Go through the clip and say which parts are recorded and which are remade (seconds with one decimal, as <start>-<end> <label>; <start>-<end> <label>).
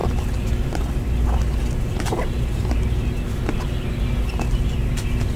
0.0-5.4 recorded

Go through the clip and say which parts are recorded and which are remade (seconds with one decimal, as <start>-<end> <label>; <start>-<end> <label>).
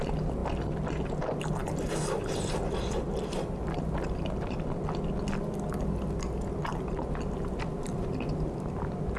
0.0-9.2 recorded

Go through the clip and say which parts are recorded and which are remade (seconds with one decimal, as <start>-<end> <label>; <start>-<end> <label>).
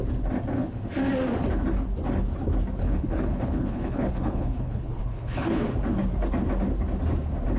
0.0-2.8 recorded; 2.8-5.6 remade; 5.6-7.6 recorded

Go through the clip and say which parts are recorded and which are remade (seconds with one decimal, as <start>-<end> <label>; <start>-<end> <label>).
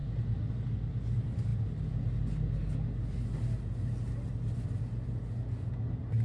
0.0-6.2 recorded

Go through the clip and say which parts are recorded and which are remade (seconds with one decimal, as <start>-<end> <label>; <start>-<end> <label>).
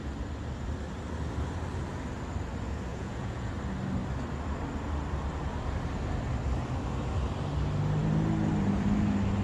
0.0-2.9 recorded; 2.9-3.5 remade; 3.5-9.4 recorded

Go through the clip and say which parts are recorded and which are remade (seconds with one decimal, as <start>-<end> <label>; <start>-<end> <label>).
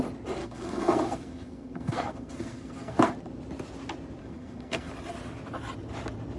0.0-0.4 recorded; 0.4-3.1 remade; 3.1-4.2 recorded; 4.2-4.9 remade; 4.9-6.4 recorded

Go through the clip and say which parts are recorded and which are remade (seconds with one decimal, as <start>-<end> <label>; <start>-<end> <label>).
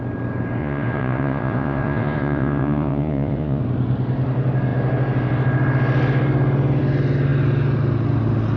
0.0-0.6 recorded; 0.6-3.6 remade; 3.6-8.6 recorded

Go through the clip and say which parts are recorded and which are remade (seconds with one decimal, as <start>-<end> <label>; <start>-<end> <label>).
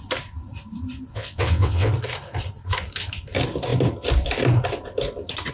0.0-1.1 recorded; 1.1-1.9 remade; 1.9-5.5 recorded